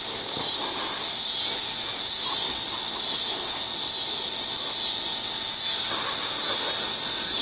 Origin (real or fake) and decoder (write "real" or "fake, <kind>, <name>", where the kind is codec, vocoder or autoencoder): real